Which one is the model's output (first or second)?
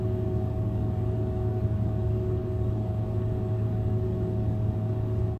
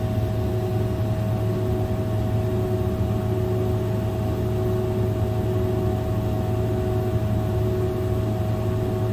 first